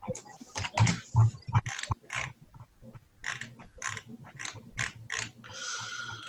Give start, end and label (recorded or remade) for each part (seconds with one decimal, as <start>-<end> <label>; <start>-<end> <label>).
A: 0.0-6.3 recorded

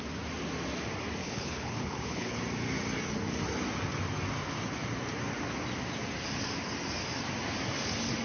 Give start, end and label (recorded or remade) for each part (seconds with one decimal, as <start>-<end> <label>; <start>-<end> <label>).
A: 0.0-1.2 recorded; 1.2-2.4 remade; 2.4-8.2 recorded

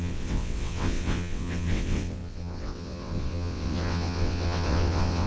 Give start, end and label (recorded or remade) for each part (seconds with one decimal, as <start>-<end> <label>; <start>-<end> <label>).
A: 0.0-5.3 remade

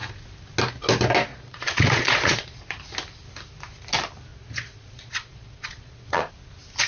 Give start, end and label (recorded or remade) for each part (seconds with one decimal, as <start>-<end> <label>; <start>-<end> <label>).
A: 0.0-1.3 recorded; 1.3-2.8 remade; 2.8-4.3 recorded; 4.3-6.3 remade; 6.3-6.9 recorded

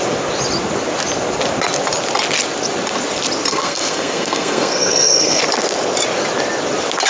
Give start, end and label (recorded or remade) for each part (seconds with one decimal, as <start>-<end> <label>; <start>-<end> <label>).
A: 0.0-3.5 recorded; 3.5-5.4 remade; 5.4-7.1 recorded

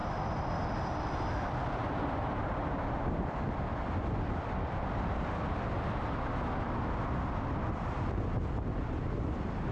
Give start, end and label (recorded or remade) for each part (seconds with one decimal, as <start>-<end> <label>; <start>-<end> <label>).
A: 0.0-3.4 remade; 3.4-9.7 recorded

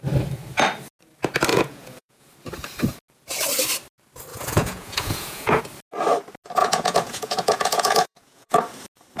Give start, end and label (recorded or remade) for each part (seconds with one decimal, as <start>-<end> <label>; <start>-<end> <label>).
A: 0.0-1.5 recorded; 1.5-2.3 remade; 2.3-4.3 recorded; 4.3-5.6 remade; 5.6-6.6 recorded; 6.6-8.6 remade; 8.6-9.2 recorded

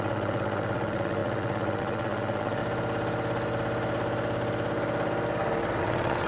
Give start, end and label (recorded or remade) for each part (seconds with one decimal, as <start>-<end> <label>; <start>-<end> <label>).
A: 0.0-2.6 remade; 2.6-5.8 recorded; 5.8-6.3 remade